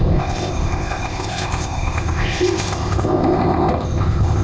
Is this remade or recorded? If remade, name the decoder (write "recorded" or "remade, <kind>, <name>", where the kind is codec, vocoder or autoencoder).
remade, codec, ZipCodec